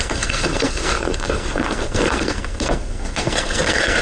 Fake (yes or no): yes